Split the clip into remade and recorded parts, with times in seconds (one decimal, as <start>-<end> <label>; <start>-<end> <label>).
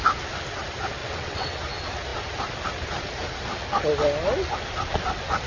0.0-1.0 recorded; 1.0-1.6 remade; 1.6-5.5 recorded